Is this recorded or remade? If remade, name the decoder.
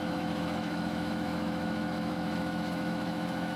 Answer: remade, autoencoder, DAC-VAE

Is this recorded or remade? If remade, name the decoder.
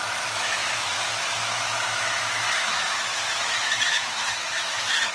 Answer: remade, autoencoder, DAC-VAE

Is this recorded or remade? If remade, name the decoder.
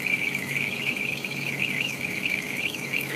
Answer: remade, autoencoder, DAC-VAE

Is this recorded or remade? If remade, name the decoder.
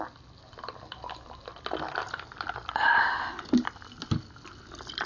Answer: recorded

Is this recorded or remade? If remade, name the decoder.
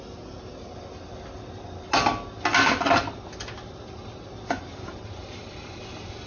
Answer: recorded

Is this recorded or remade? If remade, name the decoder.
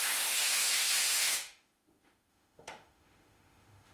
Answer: remade, autoencoder, DAC-VAE